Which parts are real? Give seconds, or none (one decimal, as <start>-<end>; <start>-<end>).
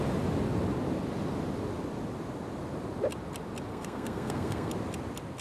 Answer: 0.0-3.7; 4.7-5.4